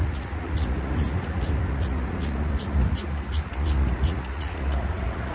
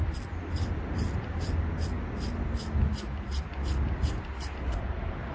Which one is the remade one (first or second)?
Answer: first